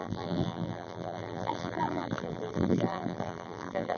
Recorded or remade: remade